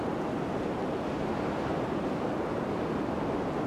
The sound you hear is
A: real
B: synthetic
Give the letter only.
A